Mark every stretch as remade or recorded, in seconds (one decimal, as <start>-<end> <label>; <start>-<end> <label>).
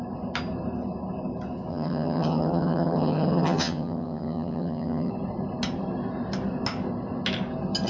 0.0-1.7 recorded; 1.7-5.1 remade; 5.1-7.9 recorded